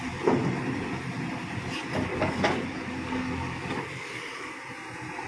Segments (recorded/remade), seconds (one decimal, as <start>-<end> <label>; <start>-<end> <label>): 0.0-2.1 recorded; 2.1-4.6 remade; 4.6-5.3 recorded